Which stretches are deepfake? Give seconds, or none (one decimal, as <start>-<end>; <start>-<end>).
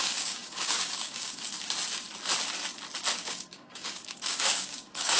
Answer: 0.0-1.5; 3.2-5.2